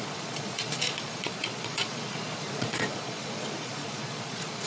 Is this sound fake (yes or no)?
yes